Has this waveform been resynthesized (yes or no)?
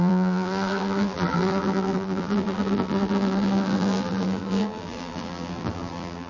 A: yes